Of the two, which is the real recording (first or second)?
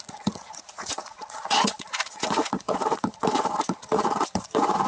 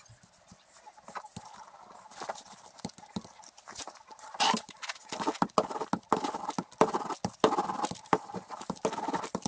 second